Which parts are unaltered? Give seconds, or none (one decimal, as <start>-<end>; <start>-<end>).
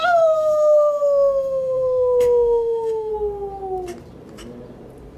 3.1-5.2